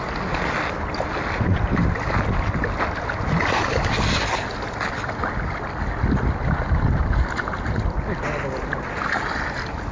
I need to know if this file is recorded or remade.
recorded